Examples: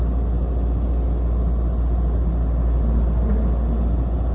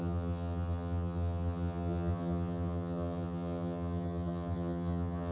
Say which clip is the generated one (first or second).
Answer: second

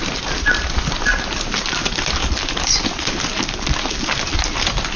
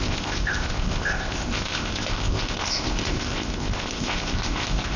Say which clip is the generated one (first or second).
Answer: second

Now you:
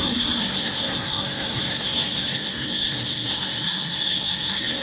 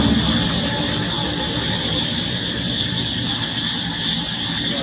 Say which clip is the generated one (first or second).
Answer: first